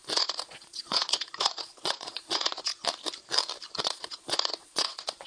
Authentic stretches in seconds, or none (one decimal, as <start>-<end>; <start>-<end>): 2.7-3.8